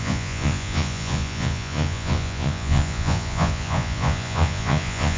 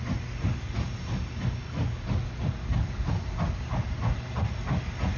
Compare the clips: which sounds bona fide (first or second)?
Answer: second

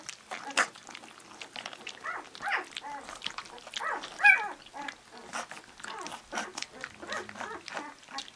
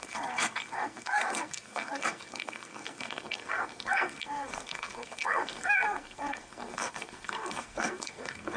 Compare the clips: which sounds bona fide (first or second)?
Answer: first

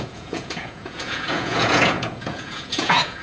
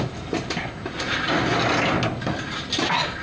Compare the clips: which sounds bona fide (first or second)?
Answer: second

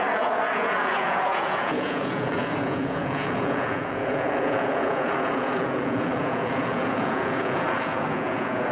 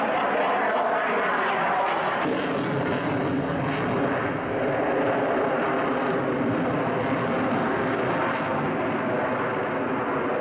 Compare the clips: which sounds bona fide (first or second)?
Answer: second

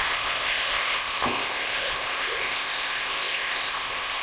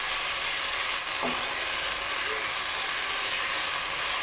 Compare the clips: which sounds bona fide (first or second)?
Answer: second